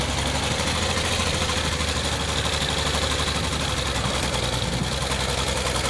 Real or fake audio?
real